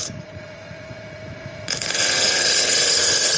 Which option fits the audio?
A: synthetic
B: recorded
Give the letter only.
A